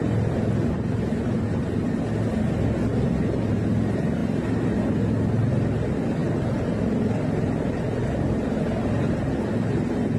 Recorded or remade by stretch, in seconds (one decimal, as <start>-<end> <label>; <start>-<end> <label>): 0.0-6.2 recorded; 6.2-7.7 remade; 7.7-10.2 recorded